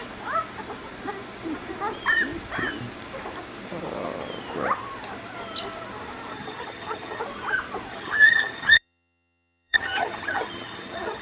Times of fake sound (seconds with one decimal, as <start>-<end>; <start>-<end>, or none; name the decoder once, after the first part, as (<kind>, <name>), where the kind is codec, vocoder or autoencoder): 6.3-7.2 (vocoder, HiFi-GAN); 7.9-11.2